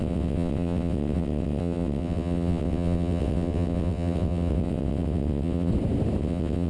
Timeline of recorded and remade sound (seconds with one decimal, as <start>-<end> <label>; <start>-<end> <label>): 0.0-5.7 remade; 5.7-6.2 recorded; 6.2-6.7 remade